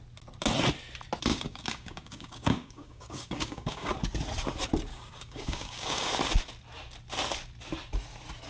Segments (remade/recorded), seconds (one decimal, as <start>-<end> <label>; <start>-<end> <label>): 0.0-1.3 recorded; 1.3-3.9 remade; 3.9-4.9 recorded; 4.9-6.1 remade; 6.1-8.5 recorded